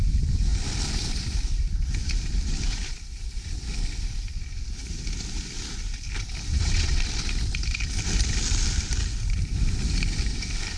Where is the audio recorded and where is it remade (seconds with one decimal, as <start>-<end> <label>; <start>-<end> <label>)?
0.0-6.5 recorded; 6.5-7.0 remade; 7.0-10.8 recorded